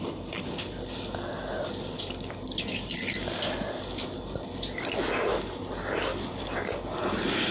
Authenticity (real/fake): real